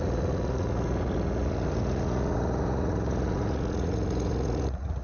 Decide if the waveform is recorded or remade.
remade